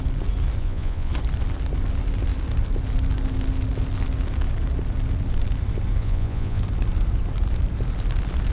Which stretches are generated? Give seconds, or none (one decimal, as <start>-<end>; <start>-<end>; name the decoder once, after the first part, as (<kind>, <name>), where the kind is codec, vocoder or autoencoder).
0.6-1.1 (vocoder, Vocos); 6.0-6.6